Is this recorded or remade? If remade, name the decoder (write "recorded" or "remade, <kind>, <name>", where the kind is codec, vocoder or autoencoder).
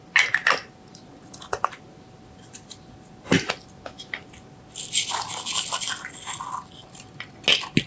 recorded